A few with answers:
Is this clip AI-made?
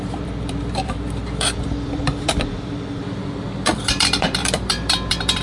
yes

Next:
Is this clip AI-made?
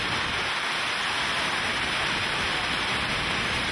no